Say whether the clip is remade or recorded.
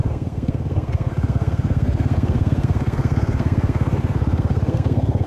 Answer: remade